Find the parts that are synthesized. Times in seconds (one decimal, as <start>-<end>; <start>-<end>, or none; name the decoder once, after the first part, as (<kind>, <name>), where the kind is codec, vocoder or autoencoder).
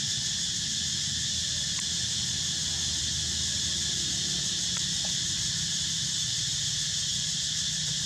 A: none